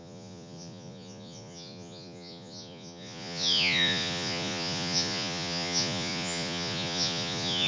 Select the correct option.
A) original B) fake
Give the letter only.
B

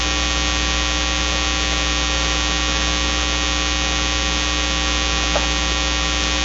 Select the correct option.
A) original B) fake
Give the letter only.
A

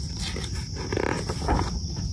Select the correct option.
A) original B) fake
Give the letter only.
A